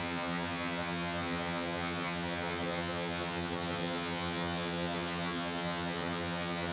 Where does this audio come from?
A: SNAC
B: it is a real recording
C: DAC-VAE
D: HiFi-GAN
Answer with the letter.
D